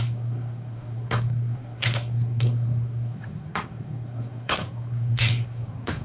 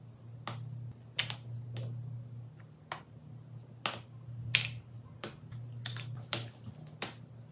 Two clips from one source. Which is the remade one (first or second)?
first